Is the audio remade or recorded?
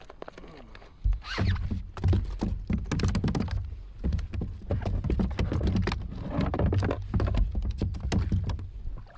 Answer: recorded